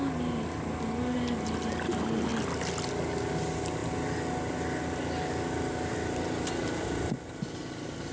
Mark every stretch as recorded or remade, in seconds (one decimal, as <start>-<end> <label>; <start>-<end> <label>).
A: 0.0-2.3 recorded; 2.3-2.8 remade; 2.8-8.1 recorded